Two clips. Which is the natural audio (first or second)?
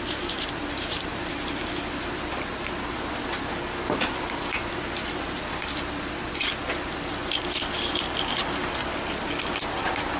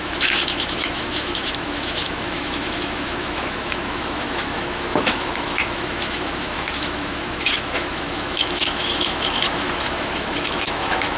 first